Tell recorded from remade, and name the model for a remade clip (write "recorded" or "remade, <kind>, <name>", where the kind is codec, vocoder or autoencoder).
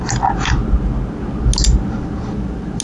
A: recorded